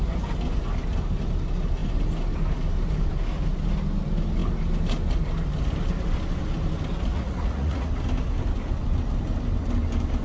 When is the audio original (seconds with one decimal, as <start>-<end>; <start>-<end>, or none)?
0.0-7.1; 7.9-10.2